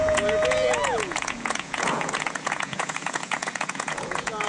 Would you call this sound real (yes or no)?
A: no